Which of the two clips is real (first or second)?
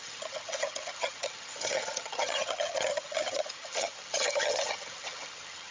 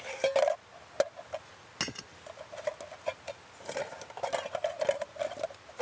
second